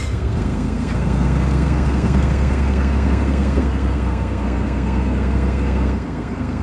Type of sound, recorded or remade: remade